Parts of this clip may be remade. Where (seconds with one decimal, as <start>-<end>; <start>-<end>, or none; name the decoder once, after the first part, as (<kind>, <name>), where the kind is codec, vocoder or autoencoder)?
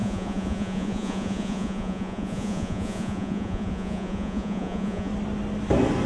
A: 0.0-5.1 (vocoder, Vocos)